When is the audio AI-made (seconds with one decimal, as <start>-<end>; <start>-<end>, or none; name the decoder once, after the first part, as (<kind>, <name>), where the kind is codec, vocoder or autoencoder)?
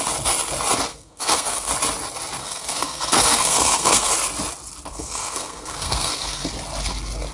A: 0.9-1.7 (codec, SNAC); 2.4-4.1; 4.9-6.5